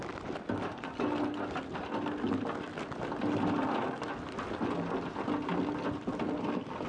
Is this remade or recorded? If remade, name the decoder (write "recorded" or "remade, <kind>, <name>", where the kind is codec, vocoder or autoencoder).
recorded